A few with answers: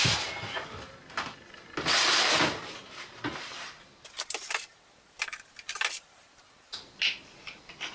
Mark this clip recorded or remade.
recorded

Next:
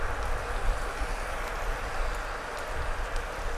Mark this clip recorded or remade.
recorded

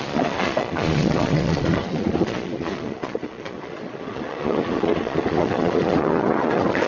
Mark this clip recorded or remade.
remade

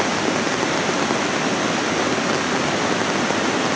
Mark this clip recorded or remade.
recorded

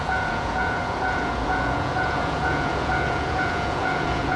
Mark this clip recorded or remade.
remade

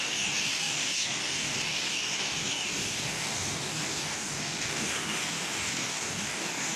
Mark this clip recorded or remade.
remade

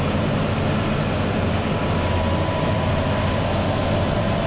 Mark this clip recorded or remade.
recorded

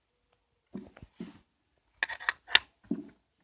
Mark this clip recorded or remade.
recorded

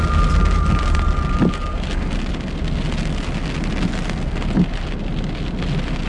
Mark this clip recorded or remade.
recorded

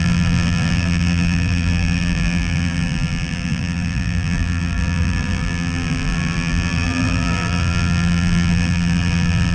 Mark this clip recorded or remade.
remade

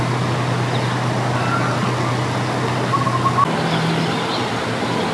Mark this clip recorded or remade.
recorded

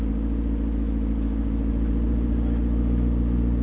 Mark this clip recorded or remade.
recorded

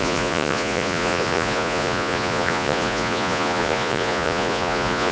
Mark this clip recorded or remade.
remade